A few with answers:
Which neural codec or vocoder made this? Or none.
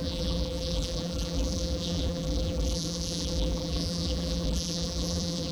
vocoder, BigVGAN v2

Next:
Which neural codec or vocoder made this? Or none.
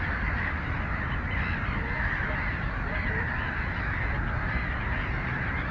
none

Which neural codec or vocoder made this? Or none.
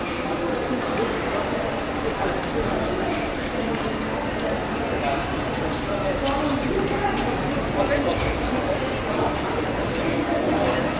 none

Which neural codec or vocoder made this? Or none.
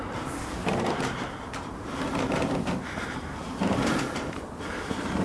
vocoder, BigVGAN v2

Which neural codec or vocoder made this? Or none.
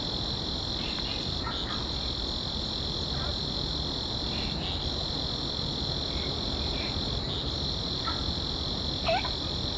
none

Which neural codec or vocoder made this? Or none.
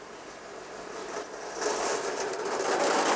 none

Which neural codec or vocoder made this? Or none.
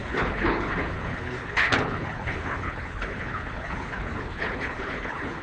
codec, HILCodec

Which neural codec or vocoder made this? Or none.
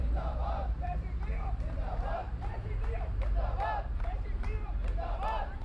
vocoder, BigVGAN v2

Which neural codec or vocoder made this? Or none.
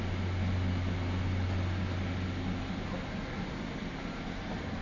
none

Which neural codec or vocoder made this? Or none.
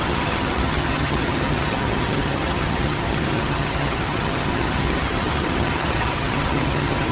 vocoder, HiFi-GAN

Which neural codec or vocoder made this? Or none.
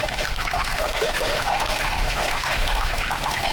autoencoder, DAC-VAE